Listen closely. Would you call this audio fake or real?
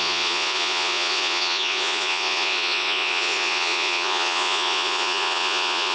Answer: fake